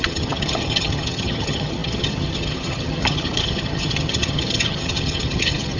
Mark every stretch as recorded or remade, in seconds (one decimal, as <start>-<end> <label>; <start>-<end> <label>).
0.0-5.8 remade